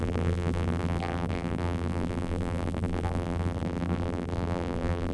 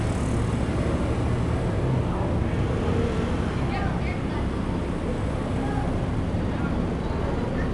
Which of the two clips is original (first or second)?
second